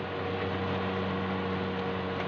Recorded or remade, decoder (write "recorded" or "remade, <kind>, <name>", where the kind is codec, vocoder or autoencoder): recorded